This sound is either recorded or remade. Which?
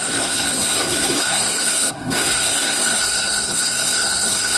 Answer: remade